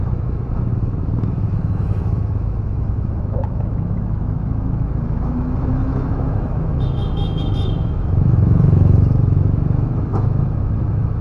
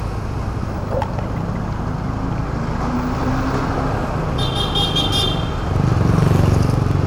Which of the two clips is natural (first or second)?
second